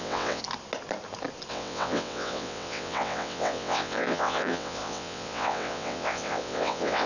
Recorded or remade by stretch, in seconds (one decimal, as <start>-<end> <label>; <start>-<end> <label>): 0.0-0.4 remade; 0.4-1.5 recorded; 1.5-7.1 remade